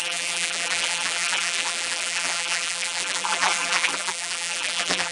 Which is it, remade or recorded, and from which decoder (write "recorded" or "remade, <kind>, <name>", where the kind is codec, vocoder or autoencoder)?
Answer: remade, vocoder, BigVGAN v2